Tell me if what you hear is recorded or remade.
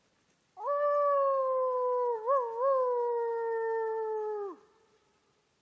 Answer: recorded